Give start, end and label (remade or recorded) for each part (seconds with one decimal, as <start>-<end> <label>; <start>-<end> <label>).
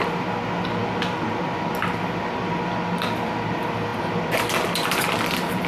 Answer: 0.0-5.7 recorded